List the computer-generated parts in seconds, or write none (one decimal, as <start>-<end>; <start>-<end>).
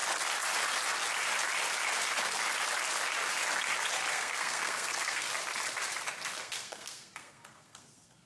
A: 4.1-5.3; 6.4-8.3